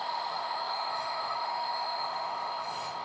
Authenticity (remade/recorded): remade